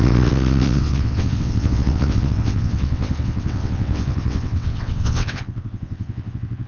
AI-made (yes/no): yes